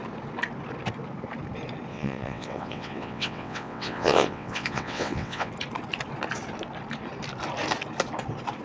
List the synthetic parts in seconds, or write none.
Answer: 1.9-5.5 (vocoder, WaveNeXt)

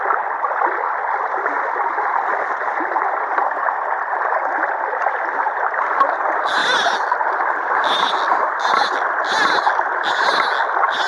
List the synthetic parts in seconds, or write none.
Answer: none

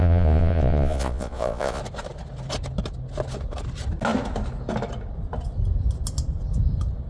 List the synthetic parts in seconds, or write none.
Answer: 0.0-1.8 (vocoder, Vocos)

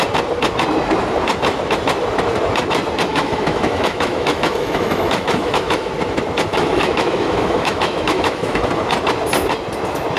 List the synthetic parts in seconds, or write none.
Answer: 3.1-5.9 (autoencoder, DAC-VAE); 6.5-8.7

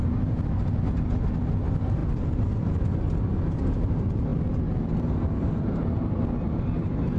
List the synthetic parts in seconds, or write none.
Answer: none

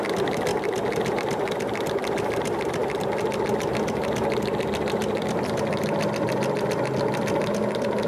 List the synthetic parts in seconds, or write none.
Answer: none